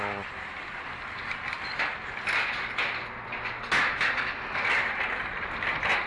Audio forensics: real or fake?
real